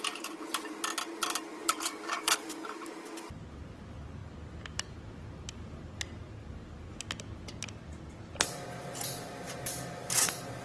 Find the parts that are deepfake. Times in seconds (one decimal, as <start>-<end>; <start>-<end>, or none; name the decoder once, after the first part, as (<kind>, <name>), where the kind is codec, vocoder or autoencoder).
1.6-2.9 (codec, DAC)